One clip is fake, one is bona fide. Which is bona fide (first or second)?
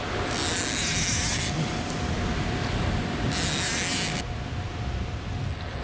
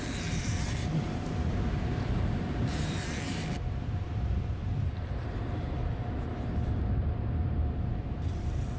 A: first